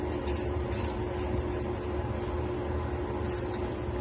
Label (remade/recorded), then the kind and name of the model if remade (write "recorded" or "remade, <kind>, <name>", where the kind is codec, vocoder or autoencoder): recorded